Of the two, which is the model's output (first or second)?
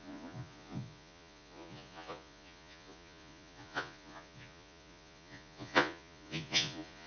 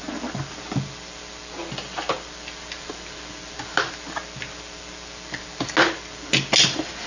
first